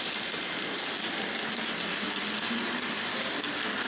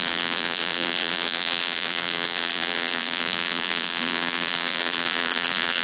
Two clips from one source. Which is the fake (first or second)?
second